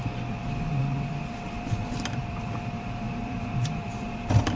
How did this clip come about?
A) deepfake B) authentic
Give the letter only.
A